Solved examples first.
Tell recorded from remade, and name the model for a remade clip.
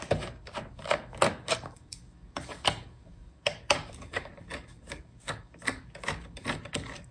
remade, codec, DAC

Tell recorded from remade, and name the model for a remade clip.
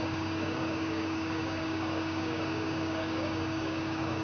remade, codec, DAC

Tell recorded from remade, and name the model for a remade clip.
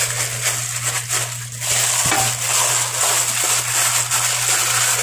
recorded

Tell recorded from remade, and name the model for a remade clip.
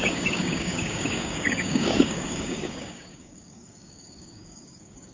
remade, codec, DAC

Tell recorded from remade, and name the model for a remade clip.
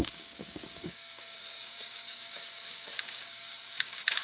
remade, codec, DAC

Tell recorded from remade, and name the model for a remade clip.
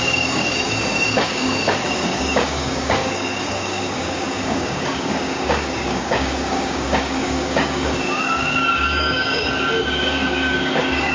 remade, codec, DAC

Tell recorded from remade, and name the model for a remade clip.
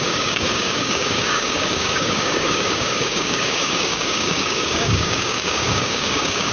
remade, codec, DAC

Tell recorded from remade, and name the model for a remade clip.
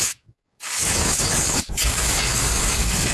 remade, codec, DAC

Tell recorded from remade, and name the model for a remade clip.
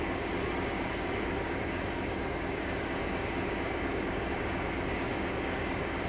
remade, codec, DAC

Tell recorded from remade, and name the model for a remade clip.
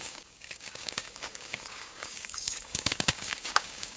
remade, codec, DAC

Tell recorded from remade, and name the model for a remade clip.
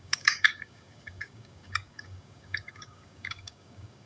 remade, codec, DAC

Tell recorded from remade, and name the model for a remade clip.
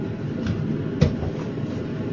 recorded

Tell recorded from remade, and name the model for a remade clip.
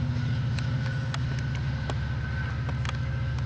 recorded